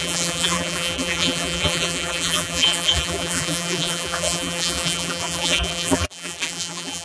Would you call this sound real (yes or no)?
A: no